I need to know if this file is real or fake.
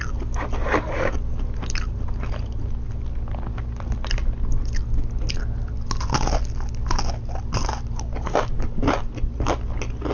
real